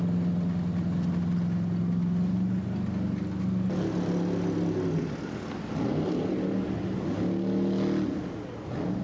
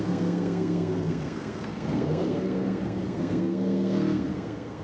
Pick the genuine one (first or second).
first